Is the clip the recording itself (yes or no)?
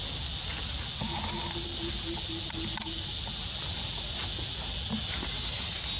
yes